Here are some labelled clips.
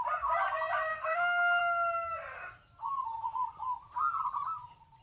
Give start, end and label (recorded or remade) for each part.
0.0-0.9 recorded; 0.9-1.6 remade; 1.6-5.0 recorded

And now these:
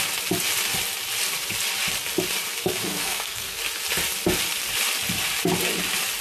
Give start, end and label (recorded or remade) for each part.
0.0-2.6 recorded; 2.6-3.6 remade; 3.6-6.2 recorded

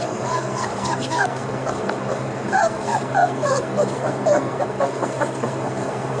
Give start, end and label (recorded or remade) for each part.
0.0-6.2 remade

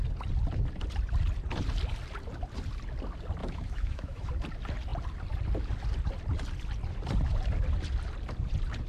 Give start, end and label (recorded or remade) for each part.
0.0-3.4 recorded; 3.4-4.3 remade; 4.3-8.9 recorded

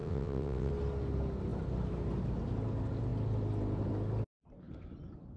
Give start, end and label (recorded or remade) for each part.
0.0-0.7 remade; 0.7-5.4 recorded